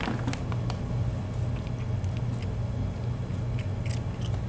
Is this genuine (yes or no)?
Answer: yes